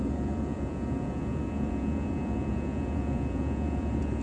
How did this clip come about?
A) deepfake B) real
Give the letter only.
A